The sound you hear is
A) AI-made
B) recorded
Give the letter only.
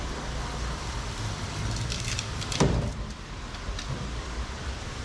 A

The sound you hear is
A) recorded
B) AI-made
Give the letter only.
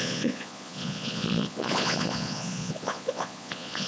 B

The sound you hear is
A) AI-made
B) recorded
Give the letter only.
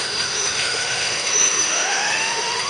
A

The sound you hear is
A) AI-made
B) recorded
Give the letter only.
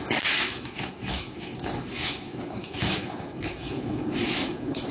A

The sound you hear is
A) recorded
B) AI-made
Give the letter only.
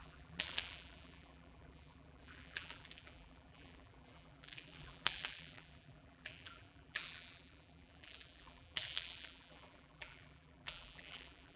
B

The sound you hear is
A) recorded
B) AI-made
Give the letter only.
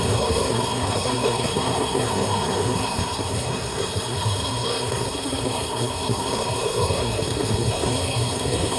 B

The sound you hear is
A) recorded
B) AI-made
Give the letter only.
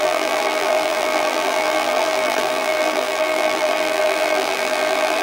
B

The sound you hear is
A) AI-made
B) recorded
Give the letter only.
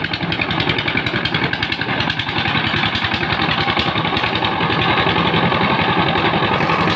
B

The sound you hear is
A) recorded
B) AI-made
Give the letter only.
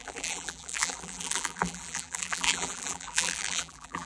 B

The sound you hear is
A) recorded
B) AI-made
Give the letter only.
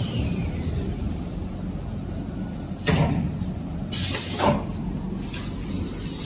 A